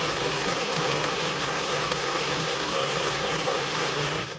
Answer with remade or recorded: remade